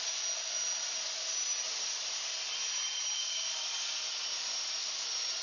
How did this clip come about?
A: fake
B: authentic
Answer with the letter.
B